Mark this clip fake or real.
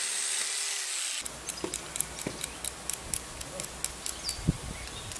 real